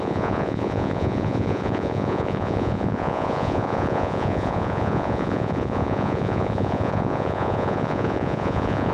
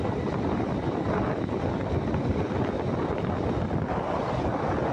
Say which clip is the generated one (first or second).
first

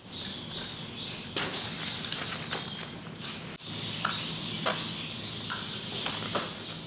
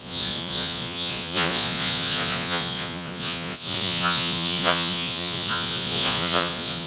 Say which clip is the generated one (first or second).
second